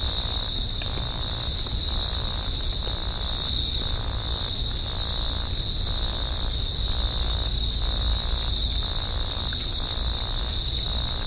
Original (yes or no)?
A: yes